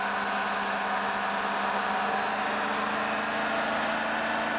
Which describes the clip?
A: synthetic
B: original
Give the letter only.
B